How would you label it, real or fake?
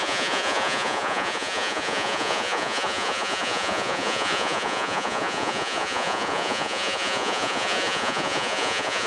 fake